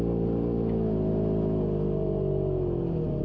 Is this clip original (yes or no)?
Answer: yes